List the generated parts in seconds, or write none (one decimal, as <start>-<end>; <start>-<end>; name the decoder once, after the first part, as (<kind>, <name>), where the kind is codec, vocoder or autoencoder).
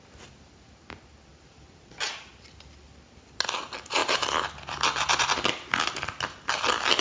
1.3-2.3 (vocoder, BigVGAN v2); 4.0-4.5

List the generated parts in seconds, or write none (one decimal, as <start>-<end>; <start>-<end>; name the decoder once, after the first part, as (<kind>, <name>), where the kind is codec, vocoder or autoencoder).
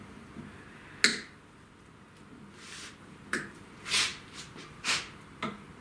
none